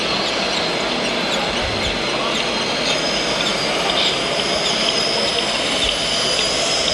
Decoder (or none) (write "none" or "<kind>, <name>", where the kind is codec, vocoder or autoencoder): none